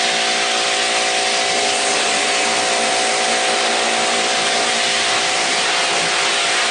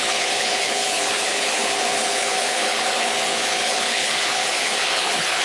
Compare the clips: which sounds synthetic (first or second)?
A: second